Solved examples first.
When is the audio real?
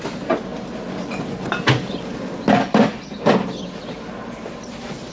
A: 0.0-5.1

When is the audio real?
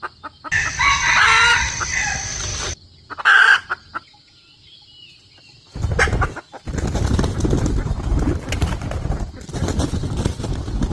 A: 0.0-2.5; 3.1-10.9